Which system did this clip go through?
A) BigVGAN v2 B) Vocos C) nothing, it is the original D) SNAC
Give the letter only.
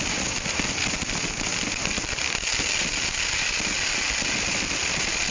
C